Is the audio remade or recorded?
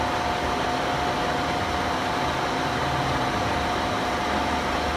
recorded